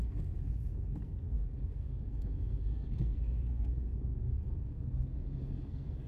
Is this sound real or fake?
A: fake